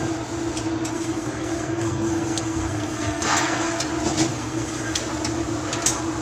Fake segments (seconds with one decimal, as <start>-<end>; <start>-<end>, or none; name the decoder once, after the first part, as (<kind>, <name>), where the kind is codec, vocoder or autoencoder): 0.9-3.8 (codec, SNAC); 4.3-5.0